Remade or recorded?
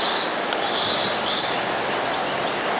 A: recorded